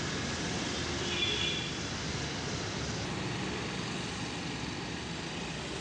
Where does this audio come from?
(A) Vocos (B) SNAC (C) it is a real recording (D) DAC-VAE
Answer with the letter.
C